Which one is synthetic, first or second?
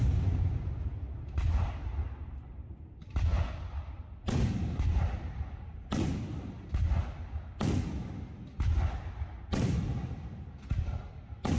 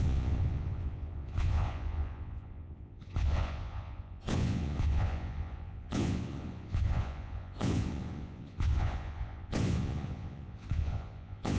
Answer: second